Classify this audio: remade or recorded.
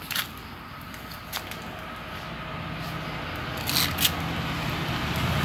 recorded